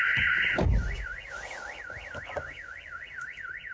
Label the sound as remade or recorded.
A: recorded